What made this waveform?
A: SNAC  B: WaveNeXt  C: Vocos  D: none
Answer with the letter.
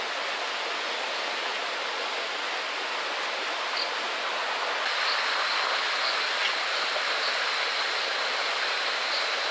D